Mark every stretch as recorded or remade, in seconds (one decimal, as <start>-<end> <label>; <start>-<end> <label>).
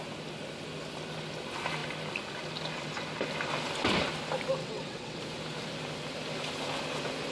0.0-4.6 recorded; 4.6-5.2 remade; 5.2-7.3 recorded